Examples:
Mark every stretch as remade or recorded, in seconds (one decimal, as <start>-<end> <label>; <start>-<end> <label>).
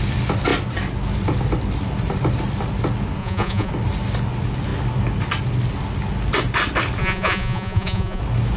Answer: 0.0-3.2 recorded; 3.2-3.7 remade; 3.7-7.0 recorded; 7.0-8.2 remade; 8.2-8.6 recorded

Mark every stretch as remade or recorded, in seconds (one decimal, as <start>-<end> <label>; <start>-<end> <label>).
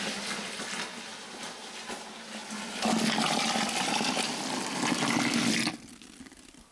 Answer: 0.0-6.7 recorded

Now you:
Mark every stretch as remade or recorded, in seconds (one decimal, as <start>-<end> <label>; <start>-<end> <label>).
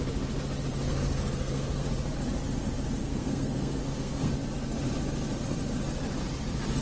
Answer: 0.0-0.9 recorded; 0.9-1.9 remade; 1.9-3.0 recorded; 3.0-4.3 remade; 4.3-6.8 recorded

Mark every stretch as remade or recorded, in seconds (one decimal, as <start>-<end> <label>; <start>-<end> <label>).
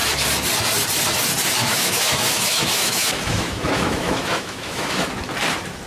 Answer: 0.0-1.6 recorded; 1.6-5.1 remade; 5.1-5.9 recorded